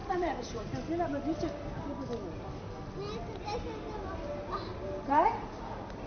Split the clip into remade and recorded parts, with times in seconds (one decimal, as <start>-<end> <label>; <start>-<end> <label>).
0.0-0.6 remade; 0.6-4.7 recorded; 4.7-5.6 remade; 5.6-6.1 recorded